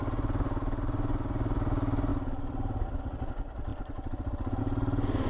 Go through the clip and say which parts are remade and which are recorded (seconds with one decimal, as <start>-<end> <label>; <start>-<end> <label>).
0.0-2.1 recorded; 2.1-3.0 remade; 3.0-3.7 recorded; 3.7-4.6 remade; 4.6-5.3 recorded